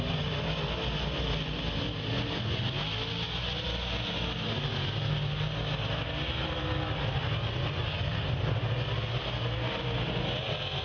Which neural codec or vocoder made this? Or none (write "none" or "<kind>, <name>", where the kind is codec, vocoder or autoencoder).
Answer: none